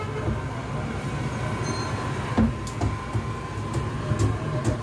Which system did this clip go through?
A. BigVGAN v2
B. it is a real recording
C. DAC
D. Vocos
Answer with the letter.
B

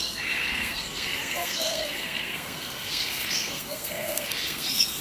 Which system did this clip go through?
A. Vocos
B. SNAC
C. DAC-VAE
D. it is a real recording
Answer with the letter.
B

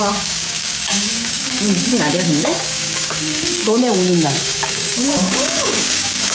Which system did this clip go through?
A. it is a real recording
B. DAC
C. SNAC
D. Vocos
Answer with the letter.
B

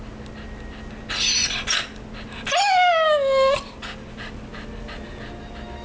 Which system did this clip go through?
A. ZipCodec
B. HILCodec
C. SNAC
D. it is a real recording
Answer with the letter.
D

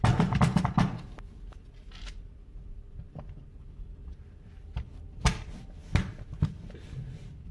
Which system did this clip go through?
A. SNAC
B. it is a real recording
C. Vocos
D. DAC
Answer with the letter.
B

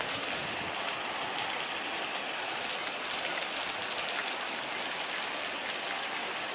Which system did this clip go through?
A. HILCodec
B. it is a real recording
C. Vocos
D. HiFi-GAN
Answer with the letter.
B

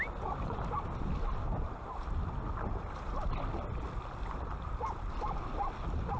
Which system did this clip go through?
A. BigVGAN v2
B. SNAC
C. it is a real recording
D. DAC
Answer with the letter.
C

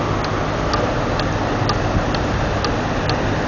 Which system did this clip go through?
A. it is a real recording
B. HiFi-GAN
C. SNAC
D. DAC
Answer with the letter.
A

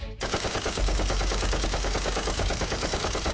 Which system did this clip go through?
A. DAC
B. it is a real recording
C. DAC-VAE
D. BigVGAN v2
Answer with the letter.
A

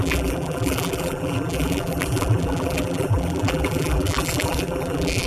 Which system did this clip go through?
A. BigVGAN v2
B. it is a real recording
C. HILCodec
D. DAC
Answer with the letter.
A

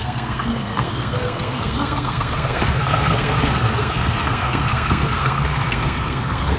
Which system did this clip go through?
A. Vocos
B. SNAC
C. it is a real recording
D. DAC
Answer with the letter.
B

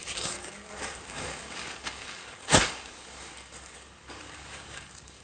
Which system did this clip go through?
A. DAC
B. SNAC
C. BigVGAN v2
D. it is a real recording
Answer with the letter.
A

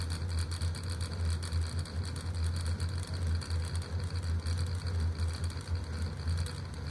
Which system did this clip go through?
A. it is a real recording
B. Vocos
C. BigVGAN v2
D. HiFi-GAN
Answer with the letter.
A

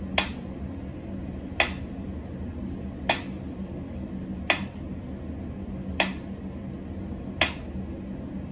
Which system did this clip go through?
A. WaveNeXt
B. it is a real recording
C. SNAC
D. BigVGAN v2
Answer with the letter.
B